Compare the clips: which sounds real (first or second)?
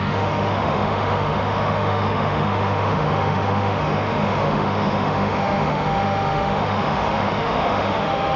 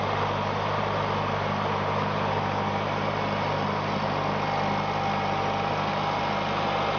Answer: second